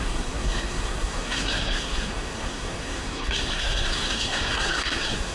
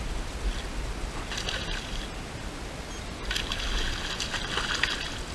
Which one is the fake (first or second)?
first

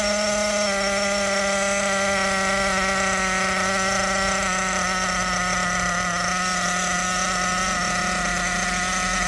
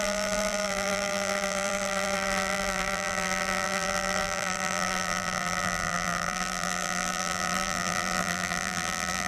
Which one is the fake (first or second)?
second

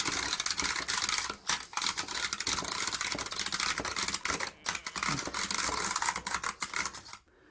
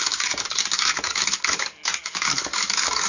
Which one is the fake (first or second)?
second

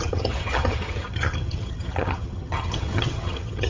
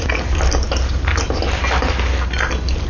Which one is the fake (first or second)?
first